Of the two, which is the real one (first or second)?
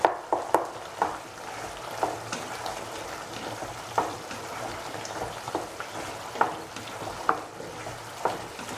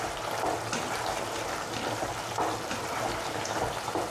second